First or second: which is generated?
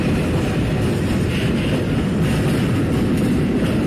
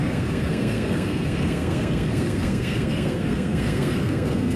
second